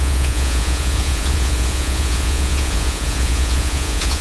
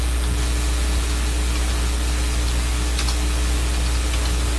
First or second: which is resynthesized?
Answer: first